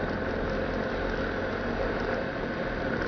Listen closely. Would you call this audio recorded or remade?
recorded